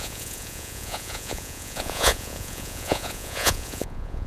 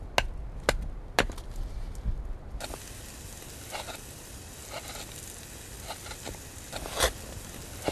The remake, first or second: first